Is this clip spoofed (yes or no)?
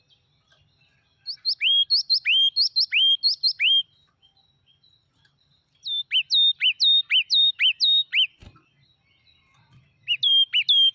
no